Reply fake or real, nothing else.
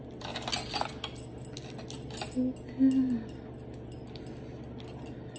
real